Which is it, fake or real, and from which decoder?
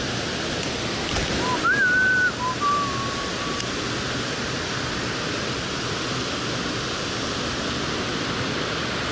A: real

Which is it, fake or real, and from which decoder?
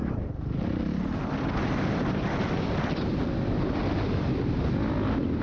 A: real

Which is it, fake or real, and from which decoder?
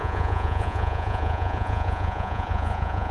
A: fake, vocoder, Vocos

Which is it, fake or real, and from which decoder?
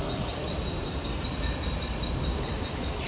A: real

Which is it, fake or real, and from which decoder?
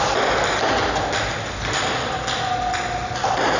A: real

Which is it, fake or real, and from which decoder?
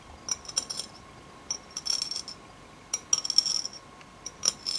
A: real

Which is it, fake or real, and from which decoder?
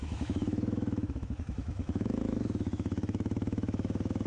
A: fake, autoencoder, DAC-VAE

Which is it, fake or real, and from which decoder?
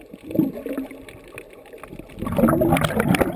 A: real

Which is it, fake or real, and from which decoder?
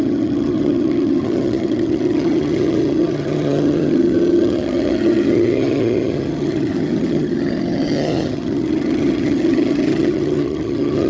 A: fake, vocoder, HiFi-GAN